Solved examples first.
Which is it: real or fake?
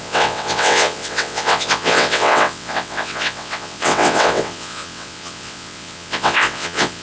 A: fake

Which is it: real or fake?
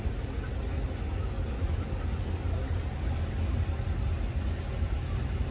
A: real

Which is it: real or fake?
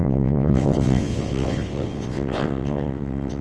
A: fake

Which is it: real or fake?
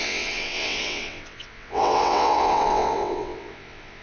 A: fake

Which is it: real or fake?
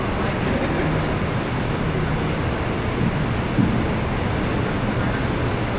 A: real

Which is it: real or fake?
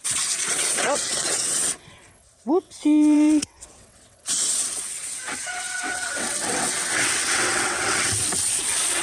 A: fake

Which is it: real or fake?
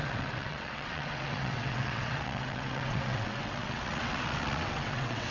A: fake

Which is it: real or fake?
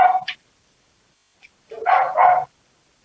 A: real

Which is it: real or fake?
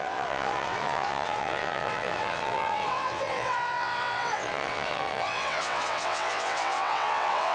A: fake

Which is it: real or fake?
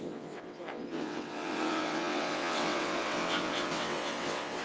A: fake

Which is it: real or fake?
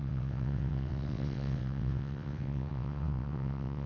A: fake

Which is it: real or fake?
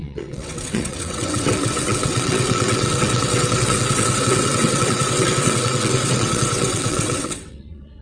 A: fake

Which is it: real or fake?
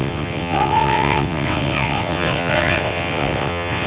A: fake